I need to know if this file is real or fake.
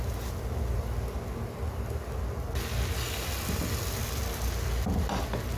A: real